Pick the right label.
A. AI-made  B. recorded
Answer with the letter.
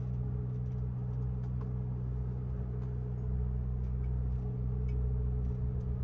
B